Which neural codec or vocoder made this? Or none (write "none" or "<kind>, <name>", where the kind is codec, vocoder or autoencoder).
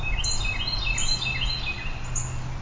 none